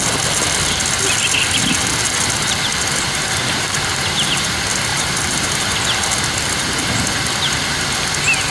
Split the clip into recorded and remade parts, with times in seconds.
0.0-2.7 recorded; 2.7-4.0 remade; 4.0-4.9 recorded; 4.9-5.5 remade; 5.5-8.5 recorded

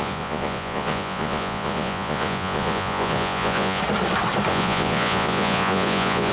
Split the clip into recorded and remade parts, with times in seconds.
0.0-3.8 remade; 3.8-4.5 recorded; 4.5-6.3 remade

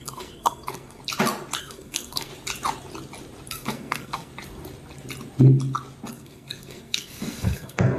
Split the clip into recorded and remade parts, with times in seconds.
0.0-1.0 remade; 1.0-1.6 recorded; 1.6-2.3 remade; 2.3-3.5 recorded; 3.5-4.3 remade; 4.3-6.1 recorded; 6.1-8.0 remade

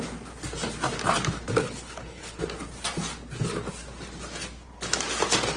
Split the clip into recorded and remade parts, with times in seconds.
0.0-1.6 recorded; 1.6-2.4 remade; 2.4-5.6 recorded

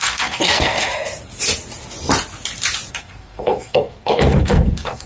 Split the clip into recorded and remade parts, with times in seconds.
0.0-0.9 remade; 0.9-2.9 recorded; 2.9-5.1 remade